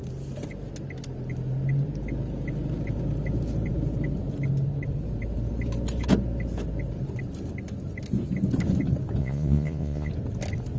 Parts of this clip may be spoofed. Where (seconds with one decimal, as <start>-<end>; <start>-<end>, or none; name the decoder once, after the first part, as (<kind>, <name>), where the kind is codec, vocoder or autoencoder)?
9.2-10.1 (vocoder, Vocos)